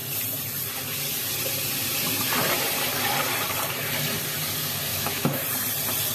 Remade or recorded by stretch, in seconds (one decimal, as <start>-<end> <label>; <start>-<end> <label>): 0.0-4.9 recorded; 4.9-5.4 remade; 5.4-6.1 recorded